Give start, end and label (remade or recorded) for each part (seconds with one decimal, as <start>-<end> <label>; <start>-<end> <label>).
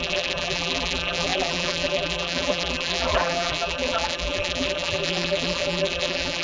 0.0-6.4 remade